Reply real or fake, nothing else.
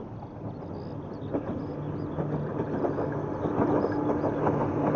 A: real